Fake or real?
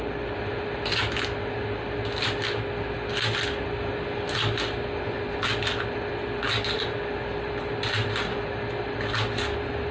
real